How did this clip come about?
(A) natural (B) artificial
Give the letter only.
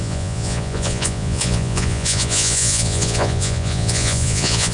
B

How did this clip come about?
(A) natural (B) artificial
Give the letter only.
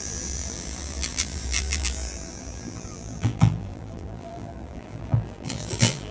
B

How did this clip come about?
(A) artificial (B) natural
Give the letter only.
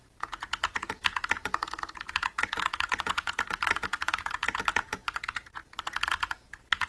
A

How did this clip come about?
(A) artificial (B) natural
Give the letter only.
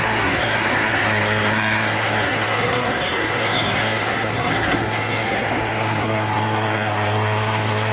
A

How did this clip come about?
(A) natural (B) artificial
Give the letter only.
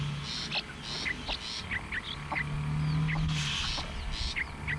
A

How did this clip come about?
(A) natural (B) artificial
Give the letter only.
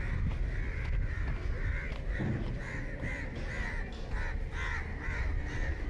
A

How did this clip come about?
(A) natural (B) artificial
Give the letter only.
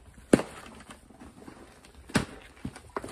A